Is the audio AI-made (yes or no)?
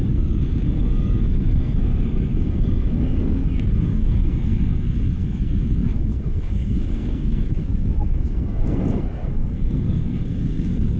yes